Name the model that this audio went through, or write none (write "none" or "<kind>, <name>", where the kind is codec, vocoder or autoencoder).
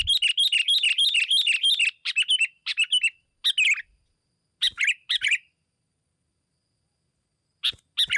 none